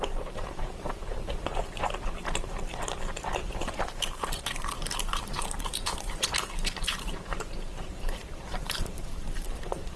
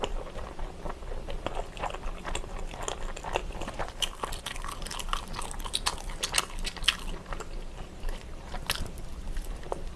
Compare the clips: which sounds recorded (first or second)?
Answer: second